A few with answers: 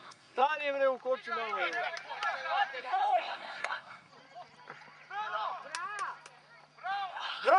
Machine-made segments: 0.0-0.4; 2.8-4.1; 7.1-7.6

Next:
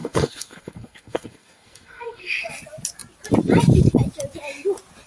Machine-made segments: 0.0-2.5

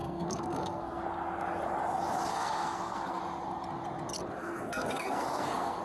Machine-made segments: 0.0-1.0; 2.3-3.2; 4.4-5.8

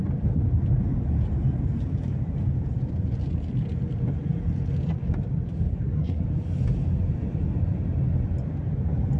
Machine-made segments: 5.7-6.2

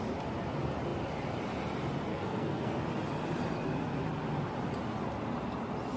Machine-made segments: 2.1-2.8

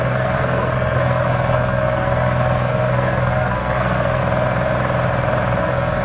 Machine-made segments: 0.0-4.2; 5.6-6.0